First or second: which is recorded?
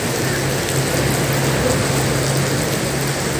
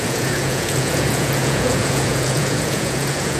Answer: first